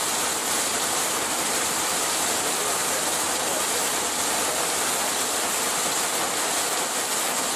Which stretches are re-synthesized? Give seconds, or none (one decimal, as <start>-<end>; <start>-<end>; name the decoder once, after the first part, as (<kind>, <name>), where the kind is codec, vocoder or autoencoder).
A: 0.4-2.3 (vocoder, BigVGAN v2); 2.8-4.6; 5.0-7.0